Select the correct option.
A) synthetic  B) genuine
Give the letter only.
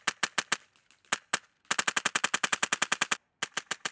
B